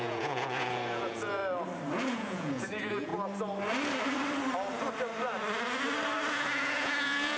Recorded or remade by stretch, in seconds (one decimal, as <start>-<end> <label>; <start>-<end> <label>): 0.0-1.4 remade; 1.4-2.1 recorded; 2.1-3.1 remade; 3.1-6.3 recorded; 6.3-7.4 remade